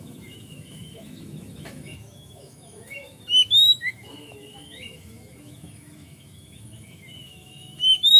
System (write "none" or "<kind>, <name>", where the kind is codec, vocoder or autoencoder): autoencoder, DAC-VAE